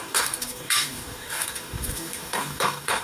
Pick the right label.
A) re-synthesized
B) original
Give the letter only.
A